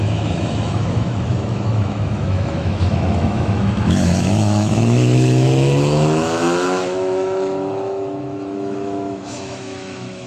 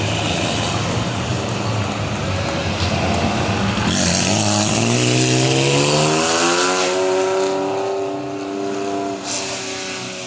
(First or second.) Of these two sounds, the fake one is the first